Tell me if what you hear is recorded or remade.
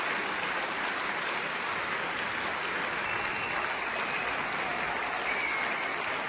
recorded